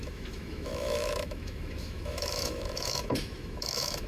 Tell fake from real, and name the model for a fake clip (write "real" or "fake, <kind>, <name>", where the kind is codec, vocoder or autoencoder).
fake, autoencoder, DAC-VAE